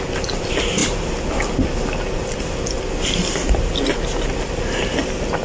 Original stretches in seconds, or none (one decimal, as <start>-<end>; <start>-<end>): 0.0-5.4